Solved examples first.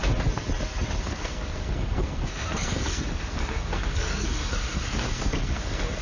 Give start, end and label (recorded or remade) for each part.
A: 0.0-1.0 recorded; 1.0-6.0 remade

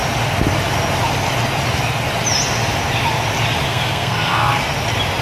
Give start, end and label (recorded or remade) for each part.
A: 0.0-3.7 recorded; 3.7-4.6 remade; 4.6-5.2 recorded